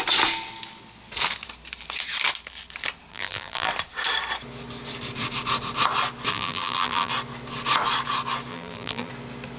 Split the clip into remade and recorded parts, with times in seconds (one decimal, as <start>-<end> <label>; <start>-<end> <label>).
0.0-3.1 recorded; 3.1-3.7 remade; 3.7-6.3 recorded; 6.3-7.1 remade; 7.1-8.5 recorded; 8.5-9.1 remade; 9.1-9.6 recorded